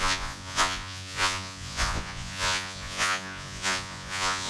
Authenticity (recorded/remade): remade